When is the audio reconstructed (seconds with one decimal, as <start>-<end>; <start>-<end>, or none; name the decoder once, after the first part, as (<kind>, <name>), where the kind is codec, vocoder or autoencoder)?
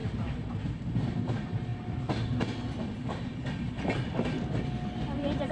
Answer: 1.1-1.7 (vocoder, BigVGAN v2); 5.0-5.5